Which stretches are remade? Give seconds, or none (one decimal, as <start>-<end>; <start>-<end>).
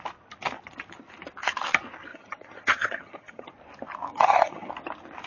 2.1-3.5; 4.1-4.7